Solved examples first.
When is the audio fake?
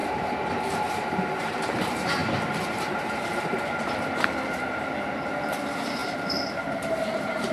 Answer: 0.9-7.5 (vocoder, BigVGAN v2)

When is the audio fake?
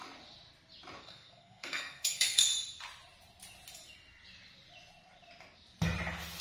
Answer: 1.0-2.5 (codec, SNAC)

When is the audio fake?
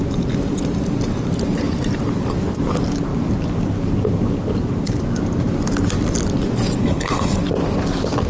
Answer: 6.8-7.4 (codec, HILCodec)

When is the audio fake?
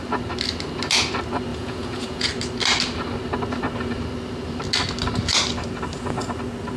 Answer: 1.5-2.3 (vocoder, Vocos)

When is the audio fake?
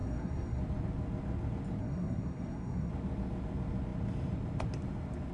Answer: 0.0-0.6 (codec, SNAC); 1.8-2.9